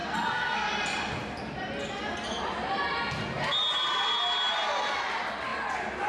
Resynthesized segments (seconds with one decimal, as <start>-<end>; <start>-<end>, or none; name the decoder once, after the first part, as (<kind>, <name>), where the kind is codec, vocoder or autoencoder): 0.0-0.7 (codec, SNAC)